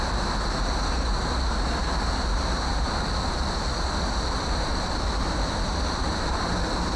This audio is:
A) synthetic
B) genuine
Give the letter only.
B